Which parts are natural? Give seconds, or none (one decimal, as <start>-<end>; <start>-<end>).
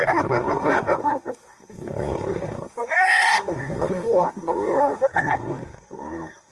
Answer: none